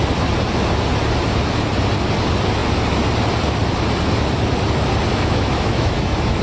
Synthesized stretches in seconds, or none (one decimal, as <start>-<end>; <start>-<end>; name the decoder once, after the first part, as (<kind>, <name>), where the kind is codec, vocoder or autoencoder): 5.1-6.4 (autoencoder, DAC-VAE)